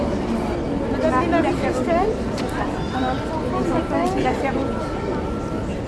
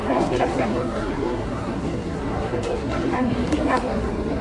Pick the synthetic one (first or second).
second